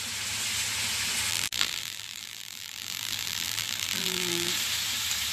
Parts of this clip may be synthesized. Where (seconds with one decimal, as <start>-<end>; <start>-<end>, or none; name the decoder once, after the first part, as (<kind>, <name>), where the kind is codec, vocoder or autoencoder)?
1.3-4.5 (vocoder, BigVGAN v2)